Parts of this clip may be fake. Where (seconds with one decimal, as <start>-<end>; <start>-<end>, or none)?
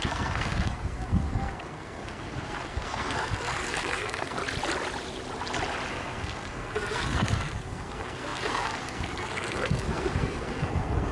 0.0-4.4; 5.9-11.1